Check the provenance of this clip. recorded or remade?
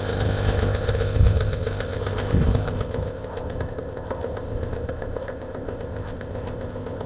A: remade